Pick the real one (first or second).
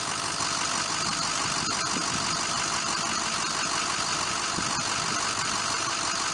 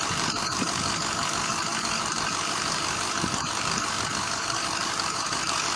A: first